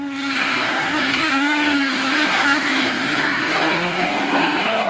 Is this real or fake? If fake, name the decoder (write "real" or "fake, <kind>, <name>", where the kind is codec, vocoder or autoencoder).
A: fake, codec, SNAC